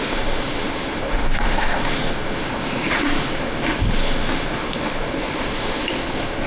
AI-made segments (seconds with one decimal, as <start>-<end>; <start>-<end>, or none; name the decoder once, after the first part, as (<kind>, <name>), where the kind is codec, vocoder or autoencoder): 0.0-6.5 (autoencoder, DAC-VAE)